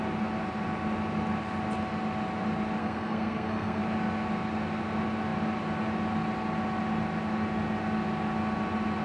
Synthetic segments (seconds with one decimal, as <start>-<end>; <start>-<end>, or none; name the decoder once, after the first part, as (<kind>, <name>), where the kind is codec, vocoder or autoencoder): 2.8-3.8 (codec, SNAC)